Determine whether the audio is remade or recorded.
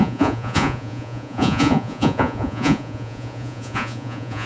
remade